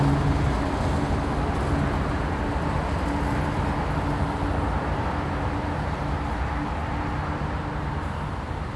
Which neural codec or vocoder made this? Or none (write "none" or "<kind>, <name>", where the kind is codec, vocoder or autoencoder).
none